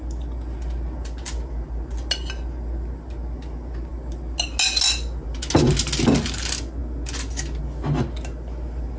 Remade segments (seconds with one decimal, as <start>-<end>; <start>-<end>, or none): none

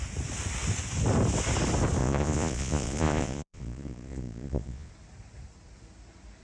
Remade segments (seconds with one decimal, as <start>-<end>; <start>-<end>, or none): 2.0-4.9

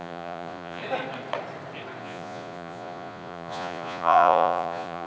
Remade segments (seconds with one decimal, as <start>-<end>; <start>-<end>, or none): 0.0-0.8; 2.0-5.1

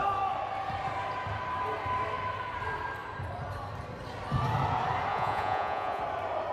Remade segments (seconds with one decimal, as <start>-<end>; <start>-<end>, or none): 5.1-6.0